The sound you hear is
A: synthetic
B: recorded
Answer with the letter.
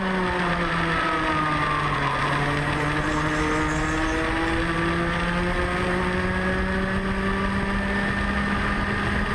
B